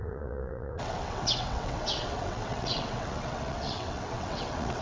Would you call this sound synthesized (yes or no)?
yes